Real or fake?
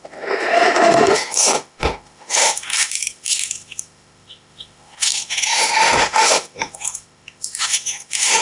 fake